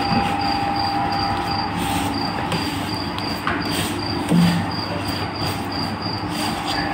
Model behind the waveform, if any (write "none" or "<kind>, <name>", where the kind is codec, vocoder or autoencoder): none